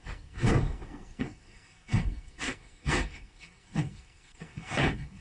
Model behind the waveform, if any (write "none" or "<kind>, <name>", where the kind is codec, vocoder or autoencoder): codec, SNAC